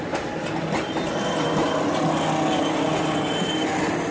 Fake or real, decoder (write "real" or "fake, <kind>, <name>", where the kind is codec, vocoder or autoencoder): real